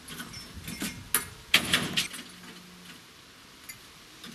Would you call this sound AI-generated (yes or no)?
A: no